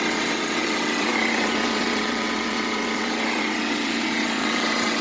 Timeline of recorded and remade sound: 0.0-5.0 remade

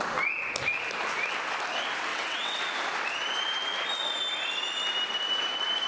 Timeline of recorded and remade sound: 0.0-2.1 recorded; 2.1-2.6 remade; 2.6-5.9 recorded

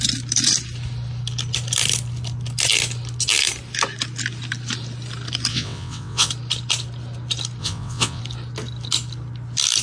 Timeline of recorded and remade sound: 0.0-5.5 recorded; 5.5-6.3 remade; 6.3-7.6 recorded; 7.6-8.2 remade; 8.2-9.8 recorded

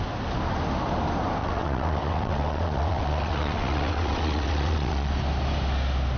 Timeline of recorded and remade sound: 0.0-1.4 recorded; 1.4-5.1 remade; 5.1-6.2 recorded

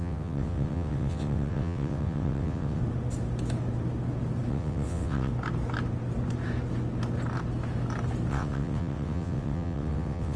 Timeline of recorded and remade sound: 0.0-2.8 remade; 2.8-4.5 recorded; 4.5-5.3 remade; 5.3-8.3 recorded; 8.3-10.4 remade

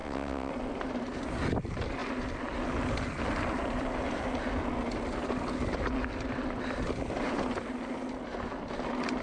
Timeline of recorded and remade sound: 0.0-0.5 remade; 0.5-9.2 recorded